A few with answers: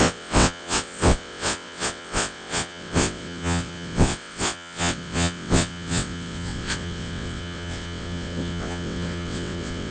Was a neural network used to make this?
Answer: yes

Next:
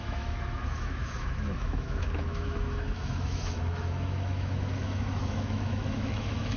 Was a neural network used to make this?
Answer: yes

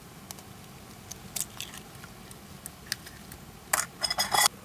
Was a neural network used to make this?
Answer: no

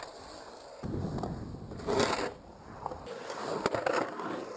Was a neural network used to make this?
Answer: no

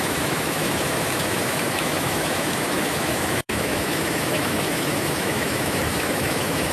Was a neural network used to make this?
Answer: yes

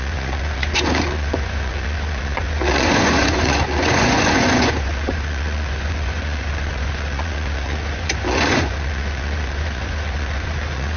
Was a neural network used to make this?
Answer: yes